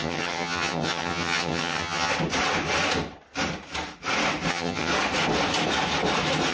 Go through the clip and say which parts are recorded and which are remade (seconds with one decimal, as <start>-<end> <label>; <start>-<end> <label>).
0.0-2.1 remade; 2.1-4.5 recorded; 4.5-4.9 remade; 4.9-6.5 recorded